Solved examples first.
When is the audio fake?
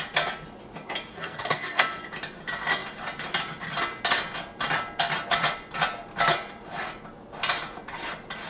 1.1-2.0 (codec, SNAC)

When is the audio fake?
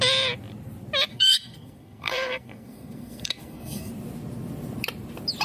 1.1-3.9 (codec, SNAC)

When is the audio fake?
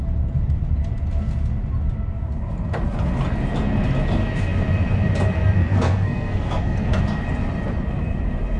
5.6-7.0 (codec, SNAC)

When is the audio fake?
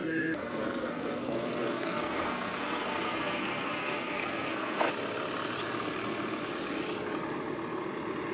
0.0-4.9 (codec, SNAC)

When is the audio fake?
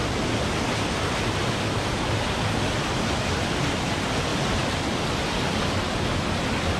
none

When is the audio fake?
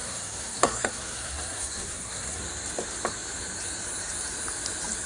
0.0-2.4 (codec, SNAC)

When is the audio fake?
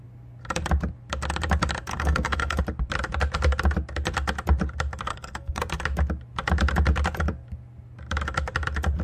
1.9-2.6 (codec, SNAC); 5.1-5.6